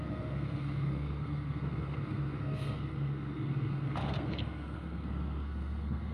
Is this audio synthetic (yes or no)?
yes